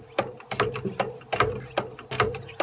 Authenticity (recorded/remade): recorded